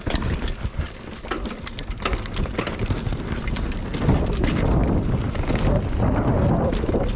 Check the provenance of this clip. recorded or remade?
recorded